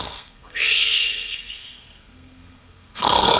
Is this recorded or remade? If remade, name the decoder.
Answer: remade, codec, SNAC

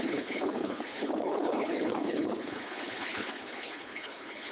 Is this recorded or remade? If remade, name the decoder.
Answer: remade, codec, HILCodec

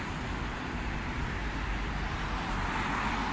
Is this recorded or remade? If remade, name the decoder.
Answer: recorded